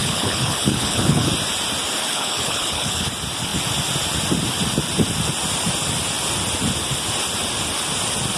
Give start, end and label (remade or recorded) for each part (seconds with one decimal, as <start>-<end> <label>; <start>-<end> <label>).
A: 0.0-1.3 remade; 1.3-2.1 recorded; 2.1-3.1 remade; 3.1-8.4 recorded